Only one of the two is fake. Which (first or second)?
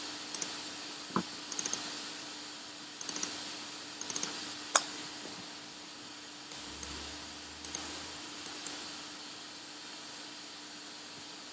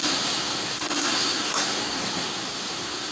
second